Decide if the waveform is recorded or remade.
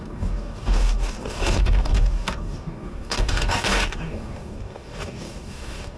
remade